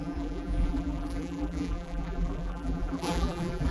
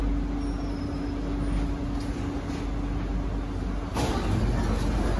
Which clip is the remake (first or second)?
first